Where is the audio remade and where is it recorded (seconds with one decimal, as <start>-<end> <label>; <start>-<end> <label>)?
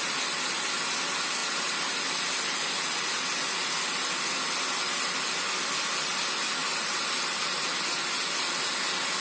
0.0-1.4 recorded; 1.4-1.9 remade; 1.9-6.6 recorded; 6.6-7.4 remade; 7.4-9.2 recorded